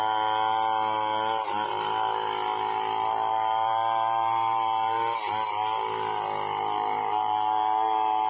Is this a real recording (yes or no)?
yes